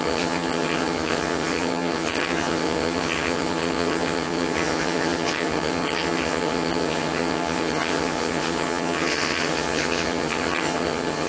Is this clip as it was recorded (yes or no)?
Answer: no